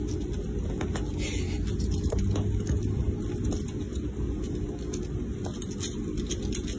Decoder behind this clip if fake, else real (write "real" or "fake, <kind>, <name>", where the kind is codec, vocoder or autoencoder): real